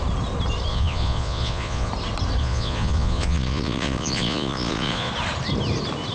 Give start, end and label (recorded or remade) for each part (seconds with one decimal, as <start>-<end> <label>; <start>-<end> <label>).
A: 0.0-0.7 recorded; 0.7-1.9 remade; 1.9-2.4 recorded; 2.4-5.1 remade; 5.1-6.1 recorded